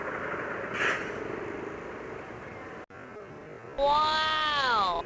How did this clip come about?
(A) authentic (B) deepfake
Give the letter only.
A